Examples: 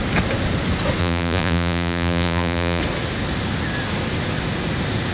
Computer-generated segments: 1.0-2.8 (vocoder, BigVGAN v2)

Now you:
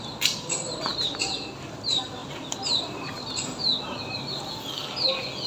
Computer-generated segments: none